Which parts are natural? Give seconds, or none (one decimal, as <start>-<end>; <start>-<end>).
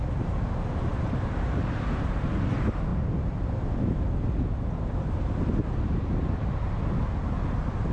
0.0-0.9; 2.3-7.9